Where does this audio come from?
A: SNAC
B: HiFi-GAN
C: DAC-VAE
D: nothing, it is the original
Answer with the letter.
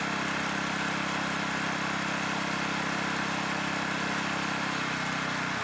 D